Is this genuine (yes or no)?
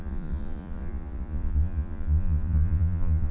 no